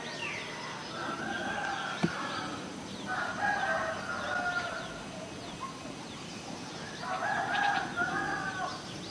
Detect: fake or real real